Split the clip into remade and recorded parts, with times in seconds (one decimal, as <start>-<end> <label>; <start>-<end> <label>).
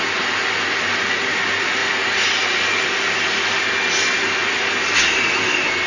0.0-5.9 recorded